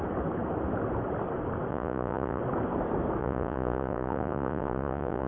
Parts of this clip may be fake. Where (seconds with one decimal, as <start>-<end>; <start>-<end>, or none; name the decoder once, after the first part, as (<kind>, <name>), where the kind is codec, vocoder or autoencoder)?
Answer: 1.7-2.4 (vocoder, Vocos); 3.2-5.3